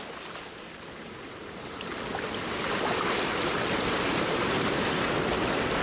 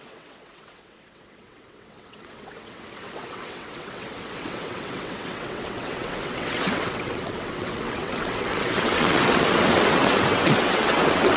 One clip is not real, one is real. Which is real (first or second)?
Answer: first